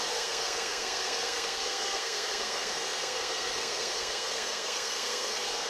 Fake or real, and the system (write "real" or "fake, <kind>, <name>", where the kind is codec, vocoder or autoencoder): fake, codec, SNAC